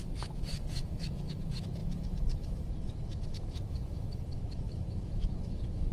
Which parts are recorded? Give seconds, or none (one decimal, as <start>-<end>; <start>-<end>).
none